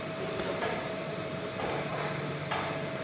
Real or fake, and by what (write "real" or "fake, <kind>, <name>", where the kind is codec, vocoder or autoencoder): fake, vocoder, BigVGAN v2